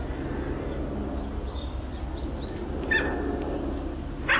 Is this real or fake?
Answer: real